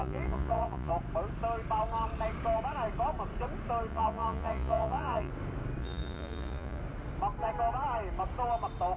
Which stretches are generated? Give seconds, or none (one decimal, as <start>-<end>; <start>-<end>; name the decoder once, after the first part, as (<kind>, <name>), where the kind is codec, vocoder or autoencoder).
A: 0.0-0.9 (vocoder, Vocos); 3.9-5.3; 5.8-6.8